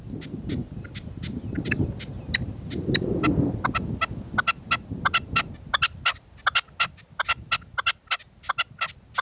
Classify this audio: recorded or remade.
recorded